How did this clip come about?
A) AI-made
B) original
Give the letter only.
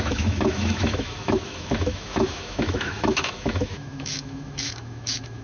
A